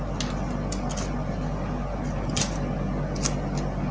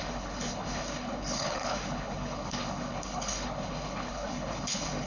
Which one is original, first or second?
first